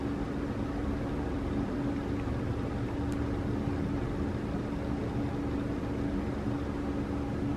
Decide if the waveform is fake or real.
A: real